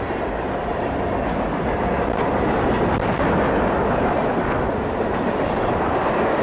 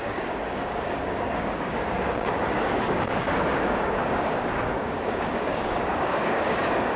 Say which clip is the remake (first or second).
second